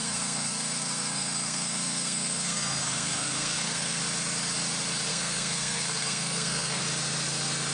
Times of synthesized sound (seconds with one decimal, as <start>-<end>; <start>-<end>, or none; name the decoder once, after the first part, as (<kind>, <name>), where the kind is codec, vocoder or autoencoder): 0.0-4.0 (codec, SNAC); 5.1-6.8